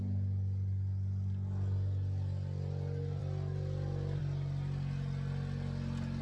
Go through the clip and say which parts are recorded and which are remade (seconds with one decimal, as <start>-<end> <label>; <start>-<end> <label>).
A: 0.0-6.2 recorded